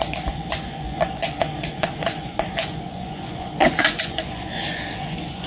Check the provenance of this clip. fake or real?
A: fake